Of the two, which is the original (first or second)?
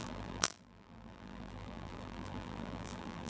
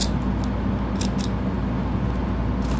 second